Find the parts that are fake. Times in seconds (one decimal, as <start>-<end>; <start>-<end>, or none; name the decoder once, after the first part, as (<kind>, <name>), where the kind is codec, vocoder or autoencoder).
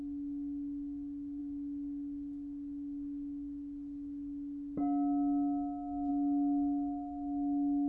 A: none